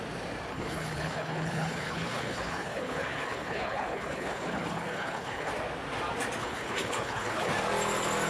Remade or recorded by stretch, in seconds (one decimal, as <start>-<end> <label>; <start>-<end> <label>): 0.0-0.5 recorded; 0.5-5.5 remade; 5.5-6.4 recorded; 6.4-7.5 remade; 7.5-8.3 recorded